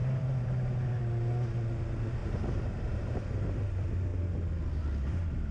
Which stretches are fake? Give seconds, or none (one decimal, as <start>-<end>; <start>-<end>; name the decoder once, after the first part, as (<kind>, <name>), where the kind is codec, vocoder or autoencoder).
0.0-1.0 (vocoder, BigVGAN v2); 2.2-3.2